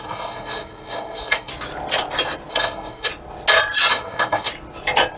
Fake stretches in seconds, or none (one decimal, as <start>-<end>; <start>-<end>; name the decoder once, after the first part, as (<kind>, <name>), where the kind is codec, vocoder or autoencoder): 0.0-1.5 (codec, SNAC); 2.5-3.1; 3.9-4.5